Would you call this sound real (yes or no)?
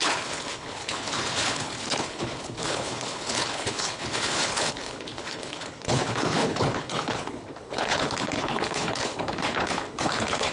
no